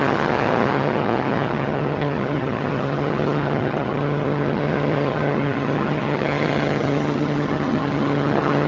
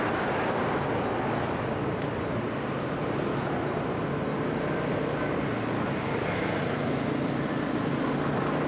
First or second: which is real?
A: second